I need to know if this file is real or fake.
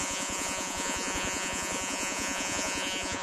fake